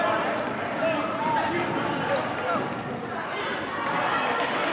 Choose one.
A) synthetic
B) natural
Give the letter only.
B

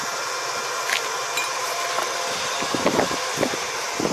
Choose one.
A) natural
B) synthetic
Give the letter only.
A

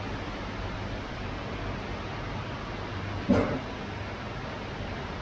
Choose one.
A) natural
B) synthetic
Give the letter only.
A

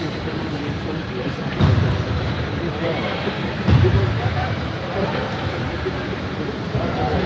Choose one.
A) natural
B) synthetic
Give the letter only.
B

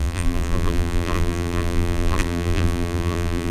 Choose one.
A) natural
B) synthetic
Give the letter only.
B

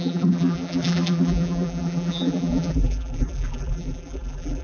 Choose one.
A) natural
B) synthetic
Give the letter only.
B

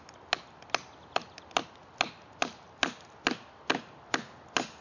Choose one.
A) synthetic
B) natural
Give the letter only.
B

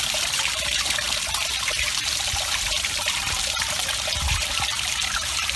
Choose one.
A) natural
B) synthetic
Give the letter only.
B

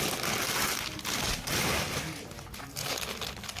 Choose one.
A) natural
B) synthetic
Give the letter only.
A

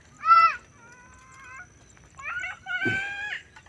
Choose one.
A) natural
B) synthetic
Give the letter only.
B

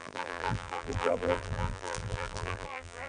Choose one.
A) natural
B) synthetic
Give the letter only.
B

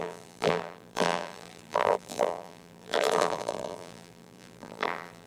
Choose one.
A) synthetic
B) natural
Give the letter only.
A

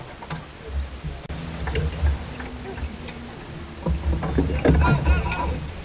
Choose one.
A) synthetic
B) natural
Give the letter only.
B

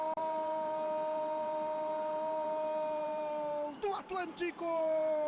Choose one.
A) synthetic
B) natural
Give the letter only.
A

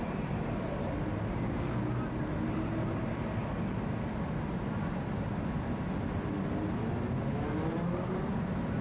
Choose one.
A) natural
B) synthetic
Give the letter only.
A